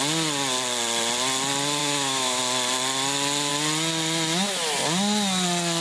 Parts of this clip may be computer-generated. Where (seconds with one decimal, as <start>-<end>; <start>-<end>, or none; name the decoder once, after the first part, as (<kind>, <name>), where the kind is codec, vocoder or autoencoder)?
1.8-2.4 (autoencoder, DAC-VAE)